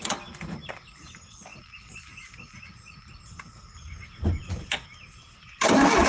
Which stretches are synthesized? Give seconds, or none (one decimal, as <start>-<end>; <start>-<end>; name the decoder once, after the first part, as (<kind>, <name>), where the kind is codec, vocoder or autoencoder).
none